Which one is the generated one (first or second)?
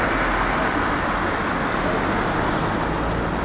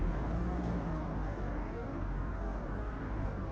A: second